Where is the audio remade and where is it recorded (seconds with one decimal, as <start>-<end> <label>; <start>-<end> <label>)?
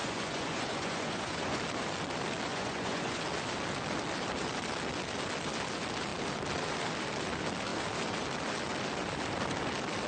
0.0-1.6 remade; 1.6-2.5 recorded; 2.5-3.2 remade; 3.2-10.1 recorded